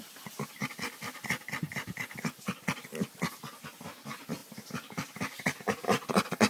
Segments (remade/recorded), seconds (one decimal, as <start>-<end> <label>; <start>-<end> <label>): 0.0-6.5 recorded